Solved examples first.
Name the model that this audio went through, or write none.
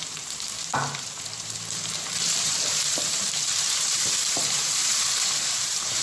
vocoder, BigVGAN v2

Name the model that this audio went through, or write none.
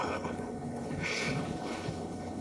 codec, HILCodec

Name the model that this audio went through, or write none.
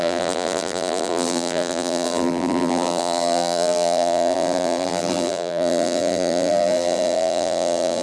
vocoder, BigVGAN v2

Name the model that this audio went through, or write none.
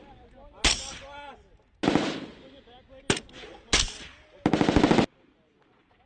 none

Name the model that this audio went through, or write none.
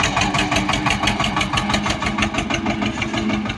none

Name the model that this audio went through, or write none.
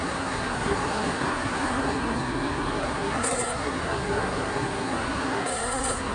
codec, SNAC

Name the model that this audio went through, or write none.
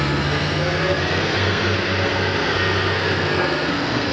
codec, SNAC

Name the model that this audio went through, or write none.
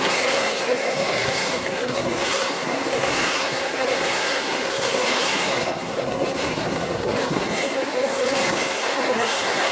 codec, SNAC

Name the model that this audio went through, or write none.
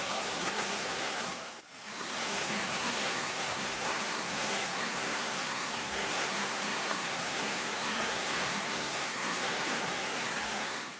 codec, SNAC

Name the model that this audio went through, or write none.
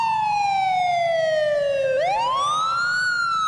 none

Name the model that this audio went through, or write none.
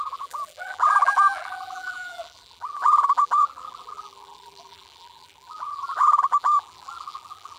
vocoder, BigVGAN v2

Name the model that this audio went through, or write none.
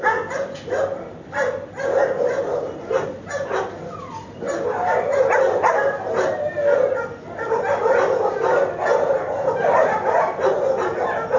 none